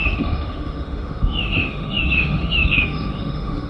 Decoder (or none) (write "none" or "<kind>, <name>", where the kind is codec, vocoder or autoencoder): autoencoder, DAC-VAE